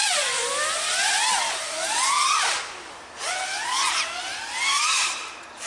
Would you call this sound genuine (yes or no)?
yes